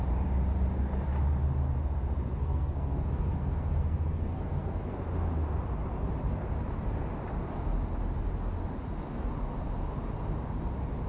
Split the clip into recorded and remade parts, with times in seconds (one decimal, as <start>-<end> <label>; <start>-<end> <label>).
0.0-2.4 recorded; 2.4-5.0 remade; 5.0-11.1 recorded